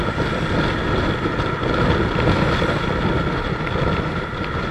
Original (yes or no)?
yes